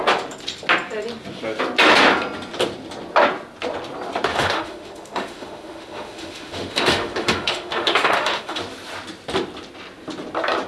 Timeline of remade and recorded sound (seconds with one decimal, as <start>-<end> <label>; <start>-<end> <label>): 0.0-4.3 recorded; 4.3-8.6 remade; 8.6-10.7 recorded

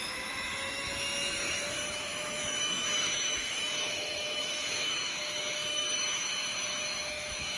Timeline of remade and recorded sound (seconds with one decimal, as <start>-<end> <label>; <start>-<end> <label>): 0.0-7.6 remade

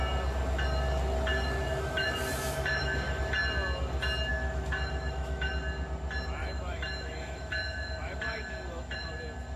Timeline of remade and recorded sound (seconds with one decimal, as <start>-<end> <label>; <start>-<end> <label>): 0.0-1.3 recorded; 1.3-3.2 remade; 3.2-4.3 recorded; 4.3-5.5 remade; 5.5-6.4 recorded; 6.4-9.1 remade; 9.1-9.6 recorded

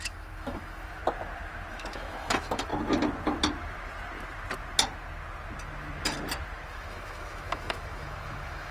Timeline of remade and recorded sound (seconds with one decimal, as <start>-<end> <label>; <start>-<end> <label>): 0.0-1.0 remade; 1.0-1.7 recorded; 1.7-2.7 remade; 2.7-6.7 recorded; 6.7-8.7 remade